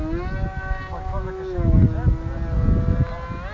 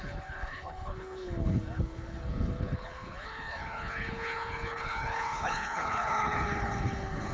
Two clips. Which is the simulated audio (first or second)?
second